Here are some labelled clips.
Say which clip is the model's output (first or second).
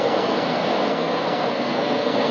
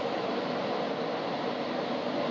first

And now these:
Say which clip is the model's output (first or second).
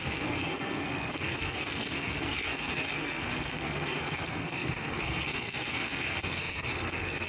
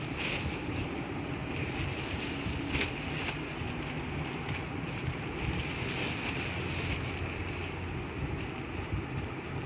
first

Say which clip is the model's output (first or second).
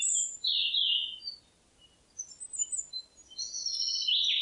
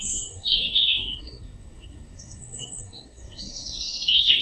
second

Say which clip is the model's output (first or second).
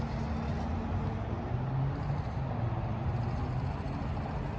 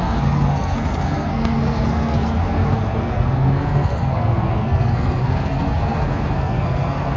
second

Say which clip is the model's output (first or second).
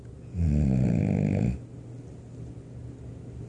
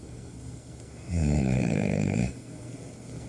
second